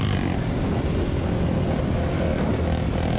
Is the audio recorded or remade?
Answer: recorded